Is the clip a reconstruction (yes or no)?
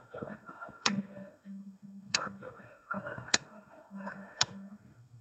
yes